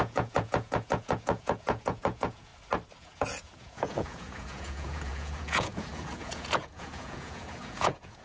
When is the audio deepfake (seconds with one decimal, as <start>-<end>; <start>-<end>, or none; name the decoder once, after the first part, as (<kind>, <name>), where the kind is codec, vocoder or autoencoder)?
0.0-2.5 (vocoder, Vocos); 3.0-8.2